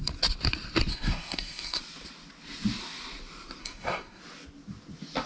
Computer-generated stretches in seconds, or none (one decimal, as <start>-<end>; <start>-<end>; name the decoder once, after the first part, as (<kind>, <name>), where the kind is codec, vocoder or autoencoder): 0.9-1.8 (codec, SNAC); 3.6-4.2